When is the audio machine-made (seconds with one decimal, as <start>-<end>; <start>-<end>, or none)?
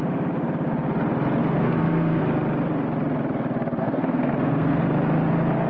1.4-2.2; 3.8-4.8